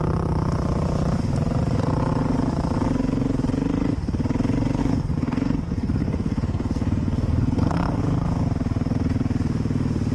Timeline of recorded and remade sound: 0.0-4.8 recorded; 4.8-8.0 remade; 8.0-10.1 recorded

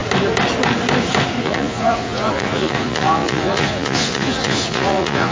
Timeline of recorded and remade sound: 0.0-1.4 recorded; 1.4-5.3 remade